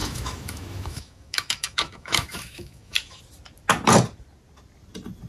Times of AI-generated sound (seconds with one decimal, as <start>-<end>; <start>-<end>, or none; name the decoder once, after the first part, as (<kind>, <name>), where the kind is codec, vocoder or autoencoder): 0.0-3.2 (autoencoder, DAC-VAE)